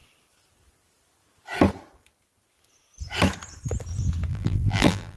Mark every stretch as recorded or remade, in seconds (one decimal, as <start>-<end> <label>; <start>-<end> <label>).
0.0-4.3 recorded; 4.3-5.2 remade